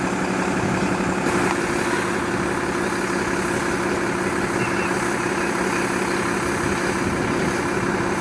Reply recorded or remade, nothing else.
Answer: recorded